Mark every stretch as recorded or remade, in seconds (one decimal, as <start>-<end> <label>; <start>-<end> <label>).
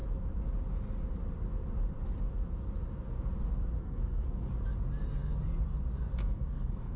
0.0-3.8 recorded; 3.8-4.5 remade; 4.5-6.2 recorded; 6.2-7.0 remade